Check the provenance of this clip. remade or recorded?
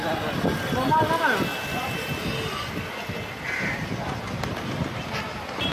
recorded